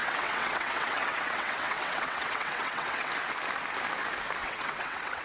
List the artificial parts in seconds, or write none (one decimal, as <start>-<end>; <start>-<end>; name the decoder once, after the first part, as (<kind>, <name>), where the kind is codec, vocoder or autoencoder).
0.0-3.1 (vocoder, WaveNeXt); 4.4-5.2